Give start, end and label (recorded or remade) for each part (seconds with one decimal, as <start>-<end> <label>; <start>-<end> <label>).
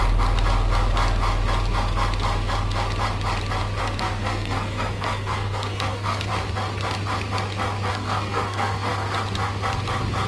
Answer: 0.0-3.8 recorded; 3.8-6.3 remade; 6.3-7.9 recorded; 7.9-8.9 remade; 8.9-10.3 recorded